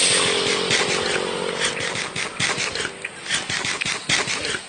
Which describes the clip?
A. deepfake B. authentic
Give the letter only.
B